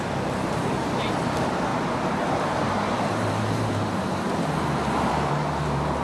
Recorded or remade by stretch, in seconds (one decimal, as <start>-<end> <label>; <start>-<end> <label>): 0.0-6.0 remade